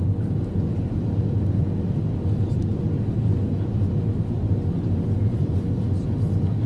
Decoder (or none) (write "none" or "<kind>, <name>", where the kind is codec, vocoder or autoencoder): none